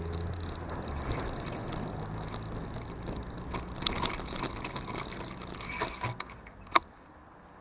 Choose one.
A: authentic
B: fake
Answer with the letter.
A